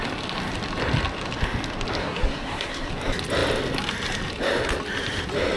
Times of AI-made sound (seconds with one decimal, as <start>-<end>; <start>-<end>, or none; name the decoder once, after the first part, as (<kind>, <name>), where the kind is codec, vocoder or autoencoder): 2.0-2.9 (codec, SNAC)